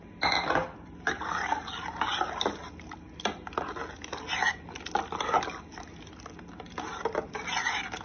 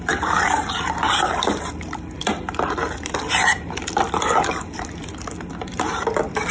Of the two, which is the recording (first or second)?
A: first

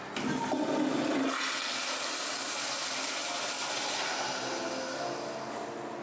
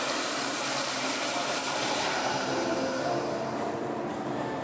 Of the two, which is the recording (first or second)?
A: first